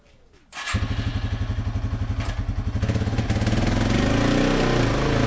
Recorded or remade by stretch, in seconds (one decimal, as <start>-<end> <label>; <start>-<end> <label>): 0.0-5.3 recorded